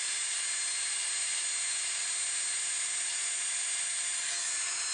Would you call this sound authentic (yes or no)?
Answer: yes